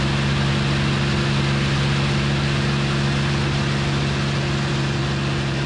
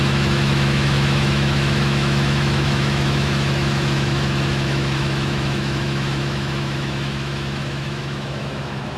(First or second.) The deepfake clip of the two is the second